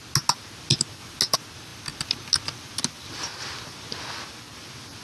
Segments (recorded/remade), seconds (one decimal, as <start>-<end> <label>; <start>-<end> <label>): 0.0-5.0 recorded